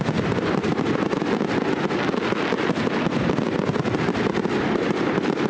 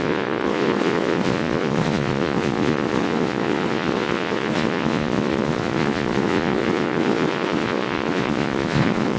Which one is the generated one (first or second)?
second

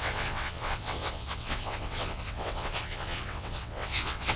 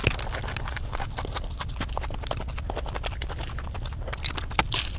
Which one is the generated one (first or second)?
first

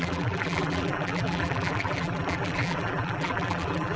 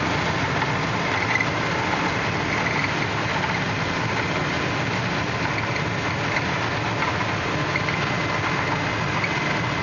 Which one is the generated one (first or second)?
first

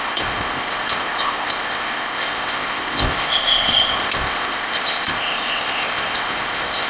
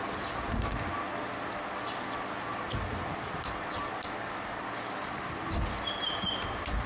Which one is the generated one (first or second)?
first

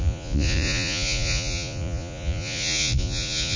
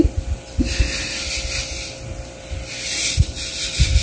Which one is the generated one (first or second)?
first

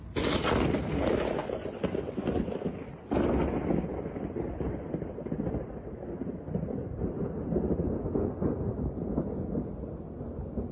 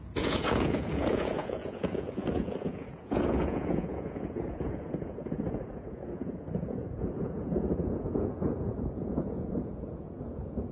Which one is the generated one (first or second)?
second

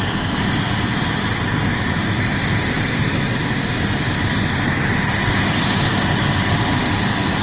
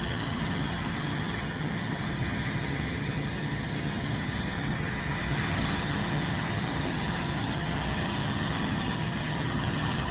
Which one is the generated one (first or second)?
second